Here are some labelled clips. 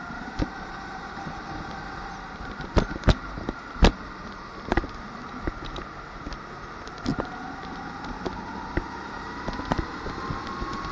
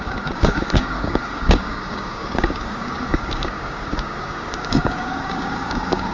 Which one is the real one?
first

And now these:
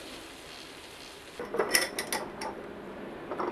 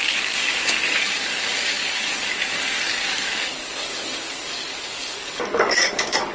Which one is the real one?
first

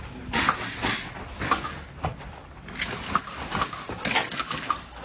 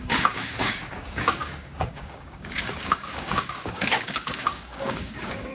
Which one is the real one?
first